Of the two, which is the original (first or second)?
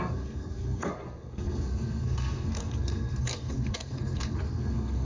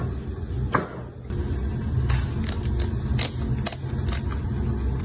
second